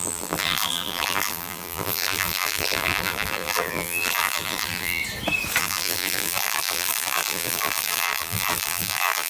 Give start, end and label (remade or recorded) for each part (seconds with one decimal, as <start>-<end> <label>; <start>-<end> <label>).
0.0-5.0 remade; 5.0-5.6 recorded; 5.6-9.3 remade